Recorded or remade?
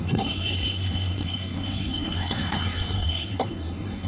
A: remade